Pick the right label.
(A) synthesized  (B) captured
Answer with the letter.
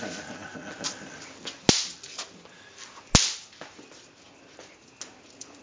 B